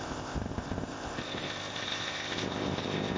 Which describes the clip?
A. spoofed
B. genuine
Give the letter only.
A